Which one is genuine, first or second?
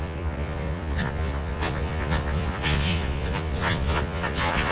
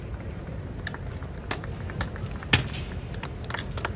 second